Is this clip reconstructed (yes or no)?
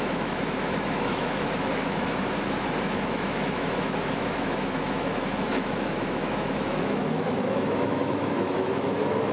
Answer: yes